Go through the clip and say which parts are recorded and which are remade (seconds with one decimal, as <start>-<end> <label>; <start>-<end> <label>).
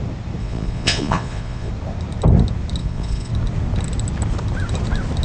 0.0-0.4 recorded; 0.4-1.7 remade; 1.7-2.8 recorded; 2.8-3.3 remade; 3.3-5.2 recorded